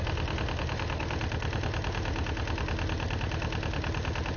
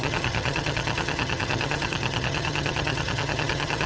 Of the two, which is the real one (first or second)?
first